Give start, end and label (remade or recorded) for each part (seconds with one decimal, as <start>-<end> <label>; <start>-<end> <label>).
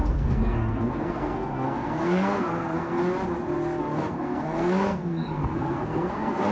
0.0-3.0 remade; 3.0-3.8 recorded; 3.8-6.5 remade